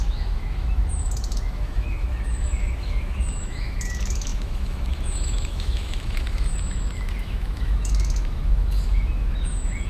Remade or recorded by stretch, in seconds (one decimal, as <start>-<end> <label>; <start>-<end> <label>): 0.0-9.9 remade